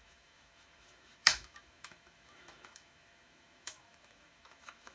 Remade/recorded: remade